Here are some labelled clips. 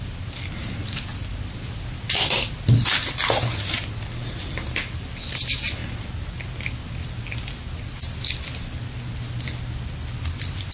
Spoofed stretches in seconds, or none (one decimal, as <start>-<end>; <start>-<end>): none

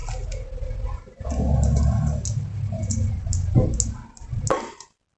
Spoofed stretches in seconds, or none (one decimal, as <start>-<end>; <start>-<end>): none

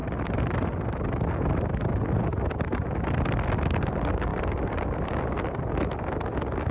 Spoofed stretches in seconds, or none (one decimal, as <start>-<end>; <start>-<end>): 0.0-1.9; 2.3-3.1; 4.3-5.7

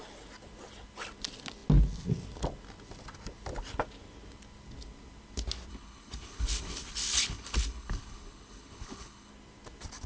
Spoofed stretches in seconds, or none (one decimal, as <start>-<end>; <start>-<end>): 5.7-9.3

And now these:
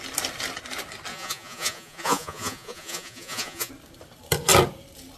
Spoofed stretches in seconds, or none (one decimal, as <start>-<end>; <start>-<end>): 1.1-3.7

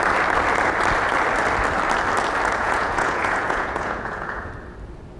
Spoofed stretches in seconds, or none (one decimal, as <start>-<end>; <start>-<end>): 2.6-4.5